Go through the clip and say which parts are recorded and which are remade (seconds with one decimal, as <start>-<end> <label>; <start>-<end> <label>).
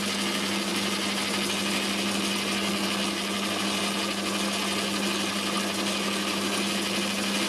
0.0-7.5 recorded